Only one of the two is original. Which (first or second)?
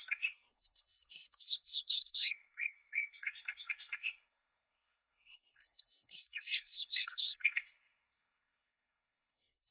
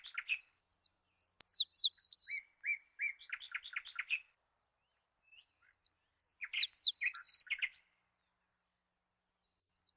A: second